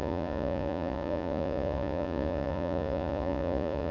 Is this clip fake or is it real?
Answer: fake